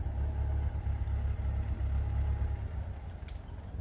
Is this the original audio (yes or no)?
yes